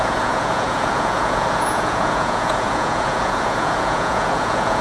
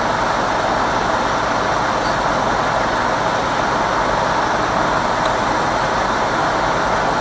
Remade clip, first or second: first